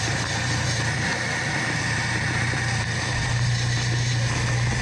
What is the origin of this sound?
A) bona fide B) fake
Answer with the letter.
A